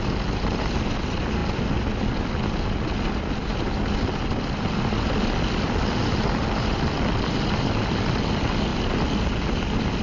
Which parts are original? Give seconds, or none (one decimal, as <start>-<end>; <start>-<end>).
0.0-10.0